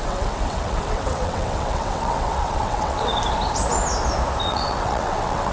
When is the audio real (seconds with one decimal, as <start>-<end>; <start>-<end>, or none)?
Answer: 3.1-4.4